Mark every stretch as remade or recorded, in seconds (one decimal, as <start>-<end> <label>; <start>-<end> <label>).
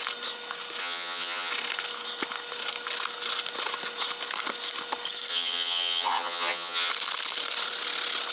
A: 0.0-0.8 recorded; 0.8-1.5 remade; 1.5-5.3 recorded; 5.3-6.9 remade; 6.9-8.3 recorded